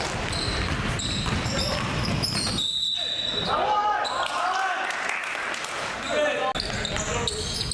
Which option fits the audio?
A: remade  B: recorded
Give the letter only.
B